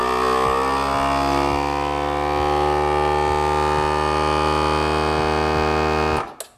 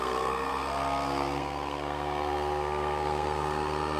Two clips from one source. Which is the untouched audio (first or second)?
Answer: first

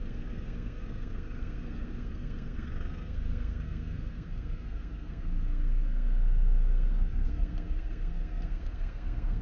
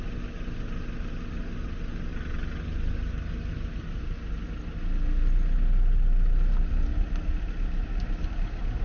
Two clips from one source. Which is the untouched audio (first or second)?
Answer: second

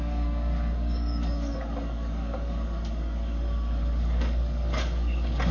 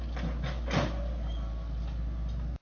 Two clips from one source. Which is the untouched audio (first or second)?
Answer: second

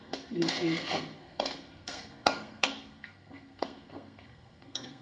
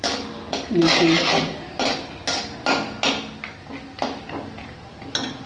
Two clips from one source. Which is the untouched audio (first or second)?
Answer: second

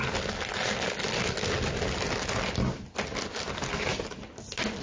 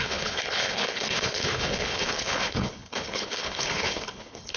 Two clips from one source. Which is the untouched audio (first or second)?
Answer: first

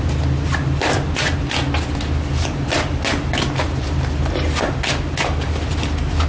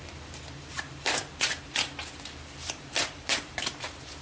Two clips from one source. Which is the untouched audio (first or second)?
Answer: first